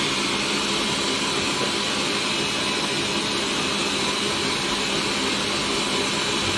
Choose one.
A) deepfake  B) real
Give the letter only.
B